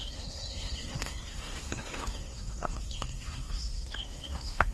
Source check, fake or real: fake